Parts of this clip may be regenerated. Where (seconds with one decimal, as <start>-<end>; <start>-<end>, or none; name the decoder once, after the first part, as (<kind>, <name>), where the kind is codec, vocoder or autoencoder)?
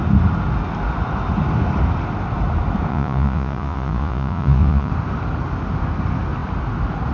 2.9-4.9 (vocoder, Vocos)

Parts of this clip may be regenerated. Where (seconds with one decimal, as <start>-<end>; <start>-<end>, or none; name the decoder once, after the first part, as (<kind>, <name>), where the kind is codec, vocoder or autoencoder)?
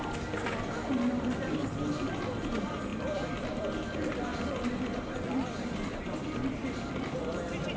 2.9-3.6 (vocoder, BigVGAN v2); 4.3-7.1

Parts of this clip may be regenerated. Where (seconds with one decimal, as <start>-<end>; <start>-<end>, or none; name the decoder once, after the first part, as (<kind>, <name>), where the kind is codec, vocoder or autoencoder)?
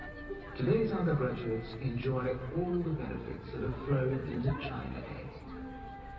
2.7-3.8 (vocoder, Vocos); 4.2-5.4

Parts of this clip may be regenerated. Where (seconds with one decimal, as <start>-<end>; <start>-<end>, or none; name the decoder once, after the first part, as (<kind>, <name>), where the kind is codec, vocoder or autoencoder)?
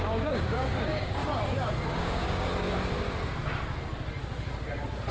0.0-1.2 (codec, DAC); 1.9-2.5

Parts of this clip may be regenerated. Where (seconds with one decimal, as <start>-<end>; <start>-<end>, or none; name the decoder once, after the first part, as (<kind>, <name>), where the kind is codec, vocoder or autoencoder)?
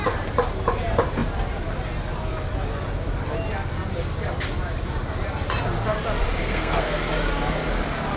6.4-7.0 (codec, SNAC)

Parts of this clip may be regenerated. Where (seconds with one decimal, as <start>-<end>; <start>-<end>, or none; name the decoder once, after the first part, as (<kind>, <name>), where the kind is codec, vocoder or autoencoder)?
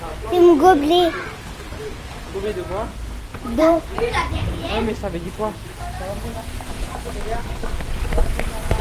3.3-4.7 (vocoder, Vocos); 6.3-6.9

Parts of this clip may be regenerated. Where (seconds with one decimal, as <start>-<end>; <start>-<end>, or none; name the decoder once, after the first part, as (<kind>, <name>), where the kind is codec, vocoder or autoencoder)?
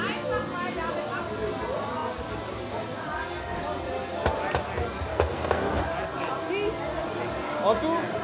5.1-5.8 (codec, SNAC)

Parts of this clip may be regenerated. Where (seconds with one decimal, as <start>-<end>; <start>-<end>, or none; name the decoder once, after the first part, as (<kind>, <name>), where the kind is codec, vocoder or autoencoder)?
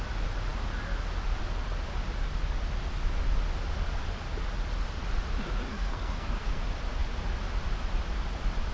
5.7-6.6 (codec, SNAC)